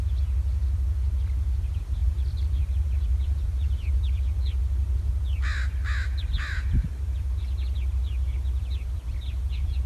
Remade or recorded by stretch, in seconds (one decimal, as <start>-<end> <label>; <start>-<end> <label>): 0.0-2.0 recorded; 2.0-4.0 remade; 4.0-9.9 recorded